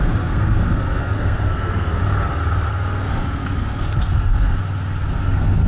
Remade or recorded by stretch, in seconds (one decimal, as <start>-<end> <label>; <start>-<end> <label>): 0.0-2.0 remade; 2.0-2.7 recorded; 2.7-4.6 remade; 4.6-5.1 recorded; 5.1-5.7 remade